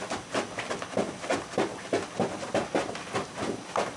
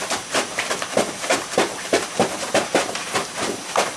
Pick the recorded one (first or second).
first